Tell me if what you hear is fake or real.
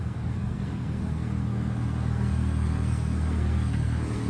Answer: fake